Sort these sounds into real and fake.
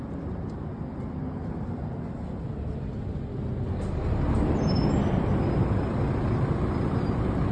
real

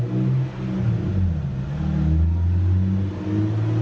real